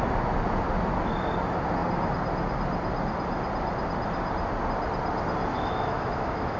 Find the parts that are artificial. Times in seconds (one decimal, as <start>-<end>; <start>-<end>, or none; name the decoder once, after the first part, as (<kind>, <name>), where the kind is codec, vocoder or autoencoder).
5.5-6.6 (autoencoder, DAC-VAE)